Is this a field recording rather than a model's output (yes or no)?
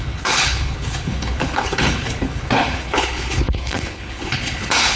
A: no